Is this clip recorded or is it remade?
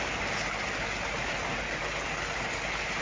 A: recorded